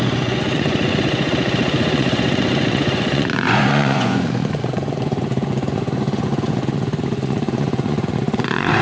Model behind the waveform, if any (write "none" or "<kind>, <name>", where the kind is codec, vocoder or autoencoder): vocoder, Vocos